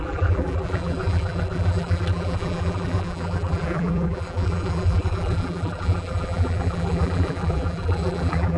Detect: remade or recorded remade